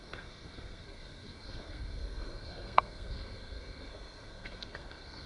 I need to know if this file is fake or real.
fake